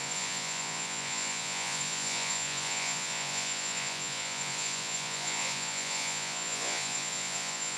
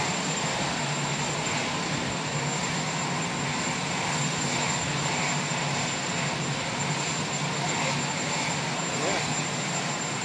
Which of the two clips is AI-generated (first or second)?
first